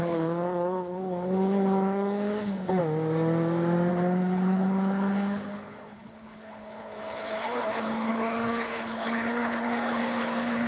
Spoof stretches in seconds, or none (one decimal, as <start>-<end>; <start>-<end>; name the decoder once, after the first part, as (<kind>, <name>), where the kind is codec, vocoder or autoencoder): 0.0-2.8 (codec, HILCodec); 3.9-10.7